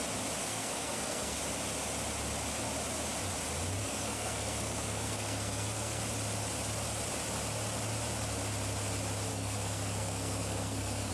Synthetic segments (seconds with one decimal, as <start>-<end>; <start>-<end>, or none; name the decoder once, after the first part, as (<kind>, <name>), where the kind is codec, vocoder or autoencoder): 0.4-1.4 (codec, SNAC); 3.8-6.0; 9.3-11.1